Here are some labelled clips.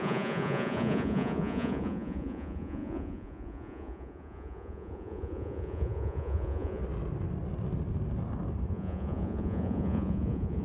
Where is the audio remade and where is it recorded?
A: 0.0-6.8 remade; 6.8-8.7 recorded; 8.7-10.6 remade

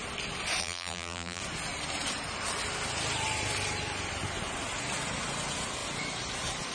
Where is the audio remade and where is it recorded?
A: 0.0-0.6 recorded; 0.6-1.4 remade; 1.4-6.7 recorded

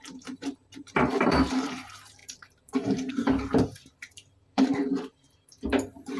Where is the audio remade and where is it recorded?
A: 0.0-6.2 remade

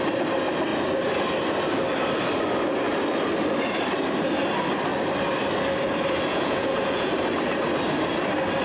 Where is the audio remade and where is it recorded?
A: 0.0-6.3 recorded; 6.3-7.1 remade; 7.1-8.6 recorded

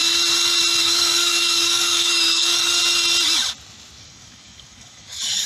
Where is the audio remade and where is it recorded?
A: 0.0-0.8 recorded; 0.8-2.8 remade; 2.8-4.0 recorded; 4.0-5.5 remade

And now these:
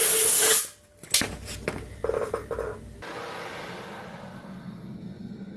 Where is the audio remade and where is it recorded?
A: 0.0-5.6 recorded

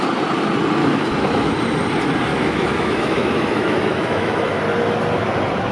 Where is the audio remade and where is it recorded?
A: 0.0-0.8 recorded; 0.8-1.5 remade; 1.5-2.3 recorded; 2.3-4.6 remade; 4.6-5.7 recorded

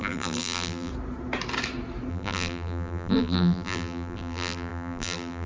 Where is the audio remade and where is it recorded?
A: 0.0-0.9 remade; 0.9-2.1 recorded; 2.1-5.5 remade